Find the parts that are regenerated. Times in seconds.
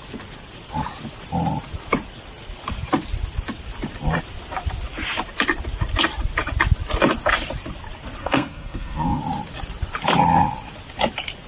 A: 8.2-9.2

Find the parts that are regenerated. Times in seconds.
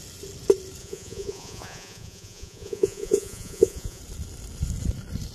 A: 0.8-4.0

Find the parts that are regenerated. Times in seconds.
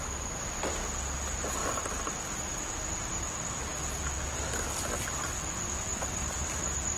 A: 1.6-3.3; 5.9-6.6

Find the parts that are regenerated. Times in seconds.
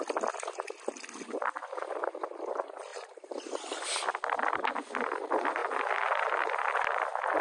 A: none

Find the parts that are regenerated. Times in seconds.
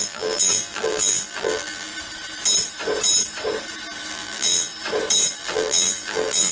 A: 0.0-1.9; 4.1-4.7; 5.3-6.5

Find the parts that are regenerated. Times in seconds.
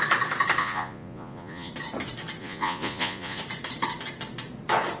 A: 0.6-1.7; 2.4-3.4